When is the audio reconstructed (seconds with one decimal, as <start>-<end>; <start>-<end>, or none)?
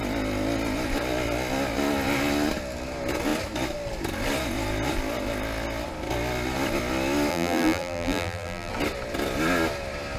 7.3-8.7